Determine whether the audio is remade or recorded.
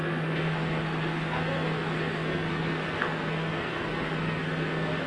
remade